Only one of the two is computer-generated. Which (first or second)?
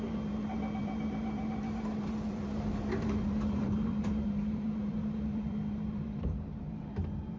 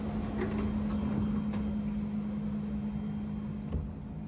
first